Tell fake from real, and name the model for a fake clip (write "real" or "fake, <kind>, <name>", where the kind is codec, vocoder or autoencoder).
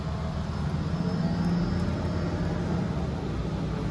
real